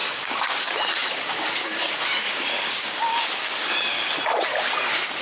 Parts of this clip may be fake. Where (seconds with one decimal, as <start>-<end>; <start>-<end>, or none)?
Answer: 0.0-0.6; 1.0-4.1